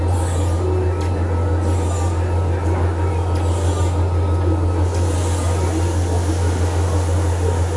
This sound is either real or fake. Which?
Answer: real